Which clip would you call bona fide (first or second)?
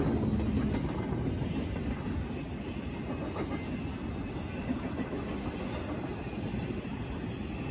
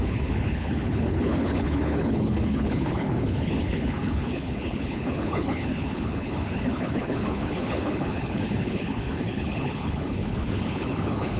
first